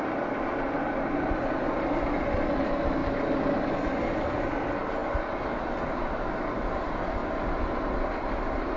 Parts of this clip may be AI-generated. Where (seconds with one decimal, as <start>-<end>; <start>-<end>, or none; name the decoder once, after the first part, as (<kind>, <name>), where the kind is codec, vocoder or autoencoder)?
none